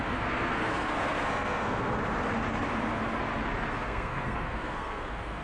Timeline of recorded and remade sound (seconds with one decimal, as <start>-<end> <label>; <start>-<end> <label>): 0.0-2.0 remade; 2.0-3.7 recorded; 3.7-5.4 remade